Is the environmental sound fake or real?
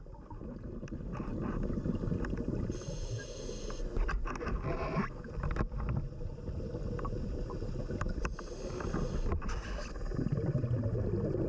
real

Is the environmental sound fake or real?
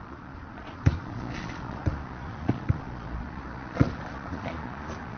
fake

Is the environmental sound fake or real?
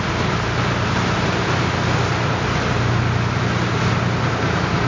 real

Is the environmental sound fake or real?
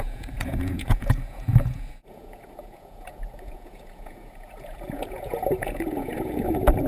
fake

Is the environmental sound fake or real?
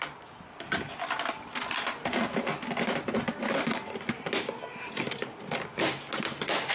real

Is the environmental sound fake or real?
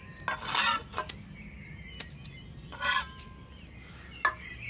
real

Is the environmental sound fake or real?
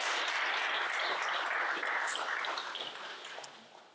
real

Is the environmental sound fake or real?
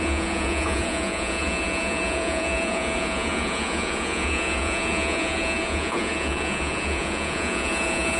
fake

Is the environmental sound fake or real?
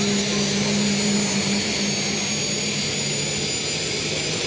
real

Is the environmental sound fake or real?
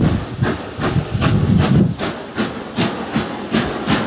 real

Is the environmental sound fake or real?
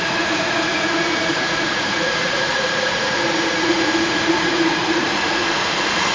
fake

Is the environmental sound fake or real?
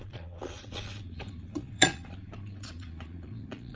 fake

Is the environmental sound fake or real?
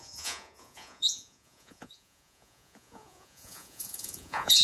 fake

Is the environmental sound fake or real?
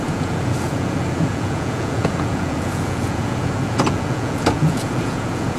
fake